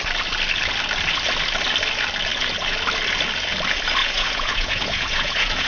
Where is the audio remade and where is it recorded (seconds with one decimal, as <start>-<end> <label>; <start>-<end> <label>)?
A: 0.0-4.0 recorded; 4.0-5.7 remade